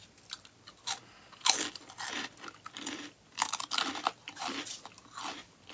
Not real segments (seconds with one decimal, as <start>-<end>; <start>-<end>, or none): none